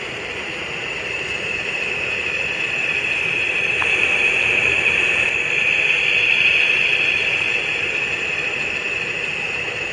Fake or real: fake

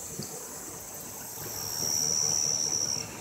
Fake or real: real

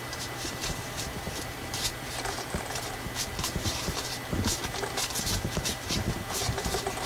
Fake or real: fake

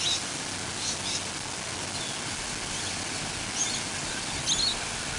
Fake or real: real